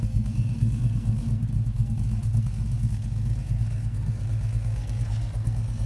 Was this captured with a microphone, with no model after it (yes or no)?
no